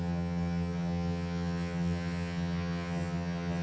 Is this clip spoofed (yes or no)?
yes